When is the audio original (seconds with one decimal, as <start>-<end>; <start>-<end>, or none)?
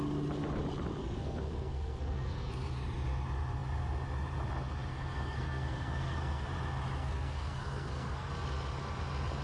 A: 0.0-1.0; 2.5-4.9; 6.5-7.0; 8.3-9.4